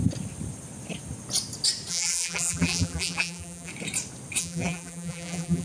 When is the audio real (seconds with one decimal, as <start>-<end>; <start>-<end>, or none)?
0.0-1.9; 3.7-4.4